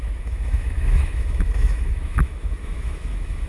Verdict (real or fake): fake